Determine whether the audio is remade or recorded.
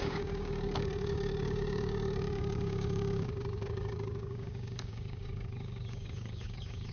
remade